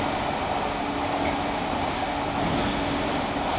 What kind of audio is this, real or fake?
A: real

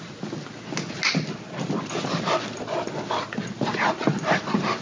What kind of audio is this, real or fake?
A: real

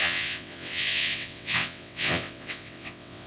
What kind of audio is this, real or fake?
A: fake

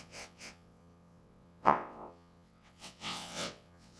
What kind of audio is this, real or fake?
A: fake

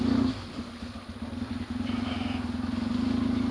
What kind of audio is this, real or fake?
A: real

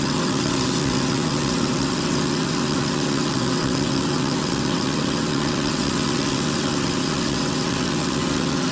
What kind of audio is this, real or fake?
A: fake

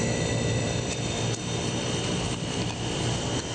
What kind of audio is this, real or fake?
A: real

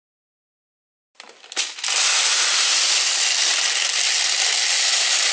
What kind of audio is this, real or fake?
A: real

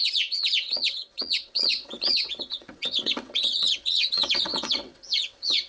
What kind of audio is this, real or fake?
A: fake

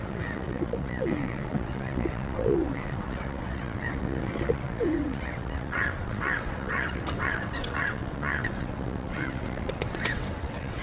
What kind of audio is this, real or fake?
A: fake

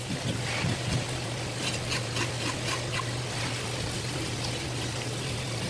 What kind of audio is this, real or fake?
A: real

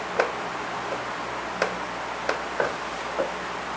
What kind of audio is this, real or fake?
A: real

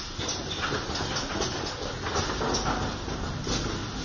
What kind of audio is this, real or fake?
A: real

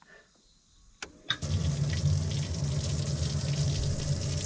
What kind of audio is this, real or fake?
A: real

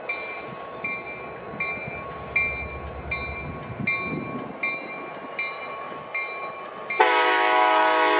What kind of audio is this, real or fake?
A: real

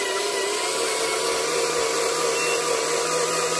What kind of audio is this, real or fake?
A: real